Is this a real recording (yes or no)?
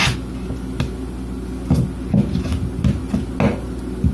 yes